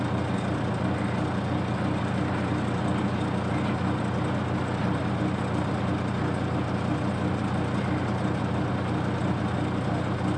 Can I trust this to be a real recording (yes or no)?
yes